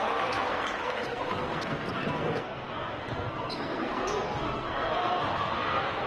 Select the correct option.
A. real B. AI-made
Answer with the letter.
B